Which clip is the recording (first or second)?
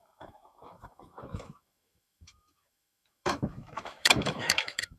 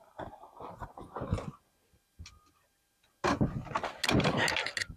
second